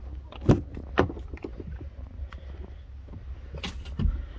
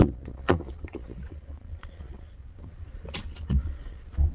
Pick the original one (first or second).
first